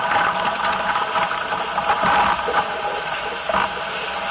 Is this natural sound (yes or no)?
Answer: yes